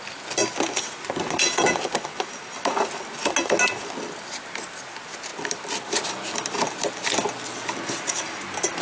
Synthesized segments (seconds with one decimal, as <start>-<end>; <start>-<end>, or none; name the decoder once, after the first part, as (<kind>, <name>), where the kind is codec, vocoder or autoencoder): none